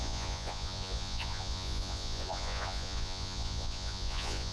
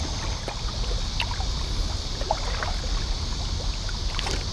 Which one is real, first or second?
second